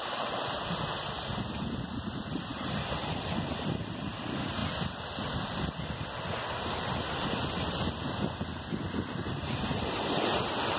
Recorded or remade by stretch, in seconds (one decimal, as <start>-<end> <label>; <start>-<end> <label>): 0.0-10.8 recorded